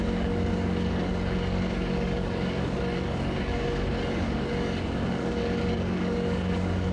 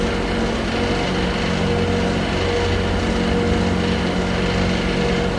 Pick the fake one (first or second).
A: first